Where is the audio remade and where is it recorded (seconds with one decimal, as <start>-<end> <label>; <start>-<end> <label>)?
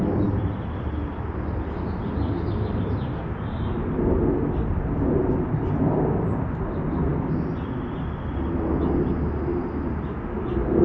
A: 0.0-10.8 recorded